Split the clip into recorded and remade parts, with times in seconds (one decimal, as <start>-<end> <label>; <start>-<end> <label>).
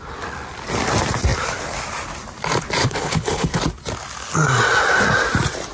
0.0-2.8 recorded; 2.8-3.6 remade; 3.6-5.7 recorded